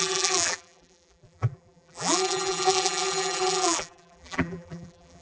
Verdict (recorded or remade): remade